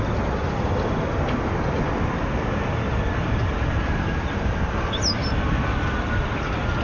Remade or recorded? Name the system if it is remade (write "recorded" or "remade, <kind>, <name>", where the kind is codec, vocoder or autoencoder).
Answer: recorded